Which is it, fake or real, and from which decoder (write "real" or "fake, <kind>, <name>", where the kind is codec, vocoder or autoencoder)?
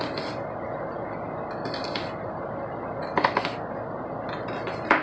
real